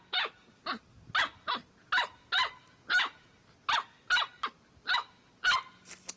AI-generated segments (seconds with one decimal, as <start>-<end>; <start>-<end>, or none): none